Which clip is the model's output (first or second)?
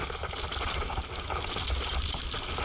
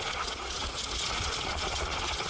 second